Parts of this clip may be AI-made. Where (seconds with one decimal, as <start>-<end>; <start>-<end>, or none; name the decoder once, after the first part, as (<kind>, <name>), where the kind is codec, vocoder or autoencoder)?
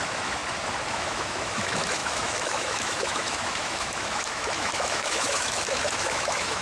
0.0-0.4 (autoencoder, DAC-VAE); 0.9-6.6